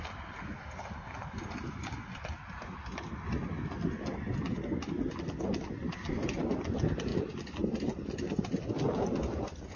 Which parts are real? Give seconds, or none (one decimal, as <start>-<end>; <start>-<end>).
0.0-9.8

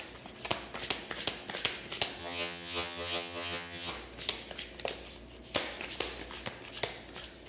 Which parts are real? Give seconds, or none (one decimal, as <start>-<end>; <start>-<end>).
0.0-2.2; 3.9-7.5

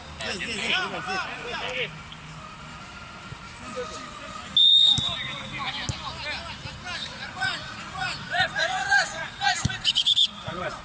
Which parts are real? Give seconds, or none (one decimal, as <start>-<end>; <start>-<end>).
0.0-7.0